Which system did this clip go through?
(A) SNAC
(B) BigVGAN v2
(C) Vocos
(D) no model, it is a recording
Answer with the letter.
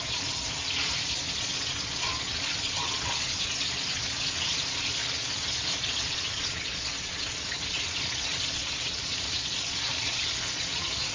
C